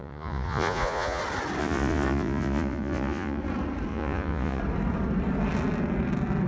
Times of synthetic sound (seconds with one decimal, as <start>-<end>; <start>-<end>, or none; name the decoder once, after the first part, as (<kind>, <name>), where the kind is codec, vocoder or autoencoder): 0.0-1.2 (vocoder, Vocos); 1.6-3.4; 3.9-4.6

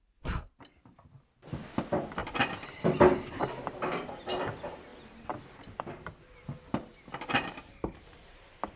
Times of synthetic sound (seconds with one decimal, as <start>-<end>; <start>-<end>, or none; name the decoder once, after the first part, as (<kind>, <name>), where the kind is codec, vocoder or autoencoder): none